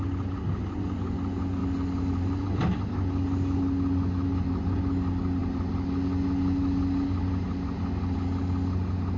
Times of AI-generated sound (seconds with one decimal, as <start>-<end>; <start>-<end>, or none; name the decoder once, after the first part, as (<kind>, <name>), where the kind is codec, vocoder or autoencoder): none

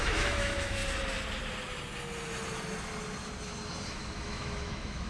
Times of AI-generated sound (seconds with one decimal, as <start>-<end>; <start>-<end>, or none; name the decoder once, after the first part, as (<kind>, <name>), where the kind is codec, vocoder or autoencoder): 0.0-0.8 (autoencoder, DAC-VAE); 3.9-5.1

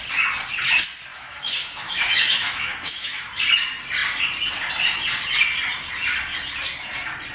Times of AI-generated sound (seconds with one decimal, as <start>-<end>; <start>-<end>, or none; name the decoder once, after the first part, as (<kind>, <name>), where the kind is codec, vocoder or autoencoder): 1.1-3.4 (autoencoder, DAC-VAE)

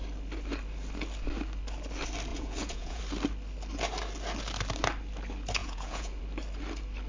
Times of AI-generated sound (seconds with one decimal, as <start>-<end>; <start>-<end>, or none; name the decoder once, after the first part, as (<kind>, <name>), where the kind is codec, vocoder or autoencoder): 2.3-3.0 (vocoder, Vocos); 5.6-6.2

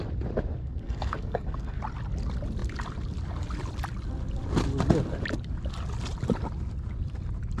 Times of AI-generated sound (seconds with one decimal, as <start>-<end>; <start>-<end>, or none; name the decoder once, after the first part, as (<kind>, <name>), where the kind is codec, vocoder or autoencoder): 0.6-1.8 (codec, SNAC)